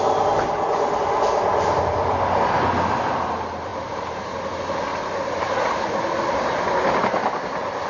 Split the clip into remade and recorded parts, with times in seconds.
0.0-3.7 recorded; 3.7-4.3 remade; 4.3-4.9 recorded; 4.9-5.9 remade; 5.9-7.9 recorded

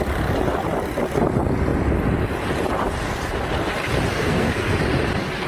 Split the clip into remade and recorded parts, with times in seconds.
0.0-4.1 recorded; 4.1-4.8 remade; 4.8-5.5 recorded